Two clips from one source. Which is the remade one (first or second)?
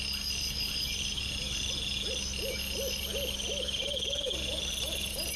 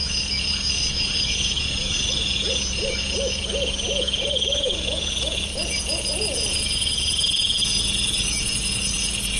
second